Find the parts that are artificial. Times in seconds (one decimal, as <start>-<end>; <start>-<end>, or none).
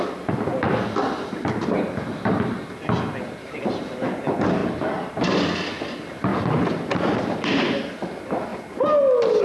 none